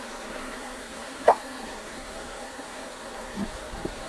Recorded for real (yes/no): no